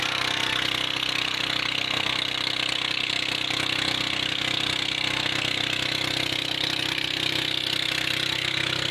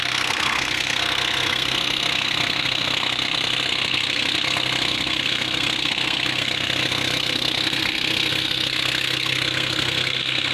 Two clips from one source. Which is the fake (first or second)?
second